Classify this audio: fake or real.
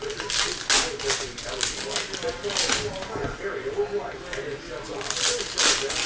real